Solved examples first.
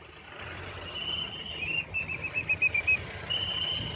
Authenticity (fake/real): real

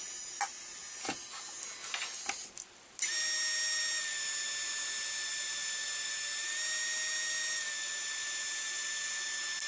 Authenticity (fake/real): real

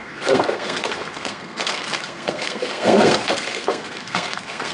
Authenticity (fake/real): fake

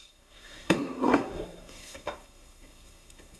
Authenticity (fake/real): fake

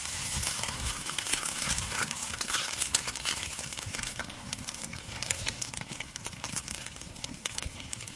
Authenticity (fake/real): fake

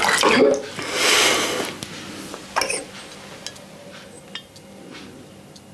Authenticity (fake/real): real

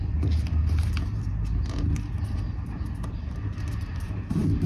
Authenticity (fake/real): real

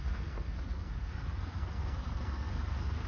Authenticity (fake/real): fake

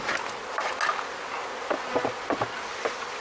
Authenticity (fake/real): real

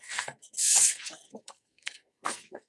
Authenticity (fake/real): fake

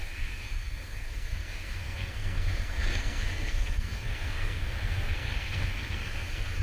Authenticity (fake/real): fake